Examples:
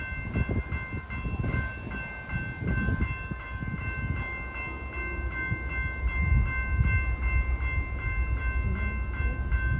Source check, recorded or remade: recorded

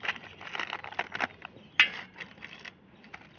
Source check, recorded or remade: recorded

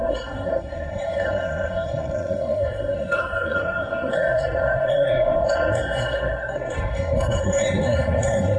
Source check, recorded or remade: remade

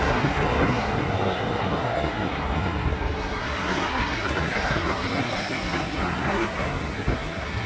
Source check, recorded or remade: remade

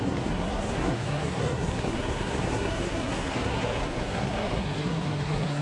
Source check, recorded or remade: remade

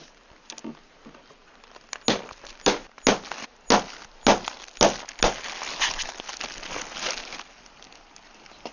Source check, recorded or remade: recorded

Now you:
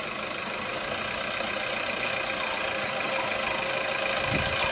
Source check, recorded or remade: recorded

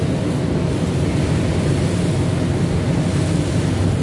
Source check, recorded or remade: recorded